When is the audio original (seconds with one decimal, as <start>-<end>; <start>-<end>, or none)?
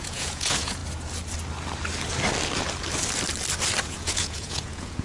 0.8-3.8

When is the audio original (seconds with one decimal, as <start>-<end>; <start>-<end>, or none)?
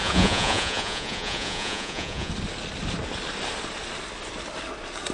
2.3-5.1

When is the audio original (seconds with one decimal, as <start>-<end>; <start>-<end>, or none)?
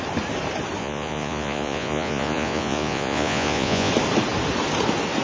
0.0-0.8; 3.9-5.2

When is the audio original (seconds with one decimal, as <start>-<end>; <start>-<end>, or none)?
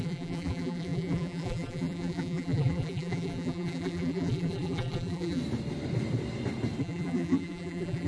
5.4-6.8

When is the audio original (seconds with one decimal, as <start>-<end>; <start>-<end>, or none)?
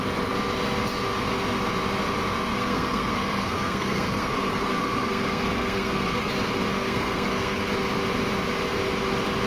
0.0-2.5; 6.3-6.7; 7.6-9.5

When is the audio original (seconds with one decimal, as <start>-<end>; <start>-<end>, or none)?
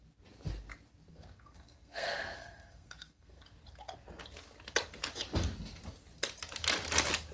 0.0-1.1; 3.4-7.3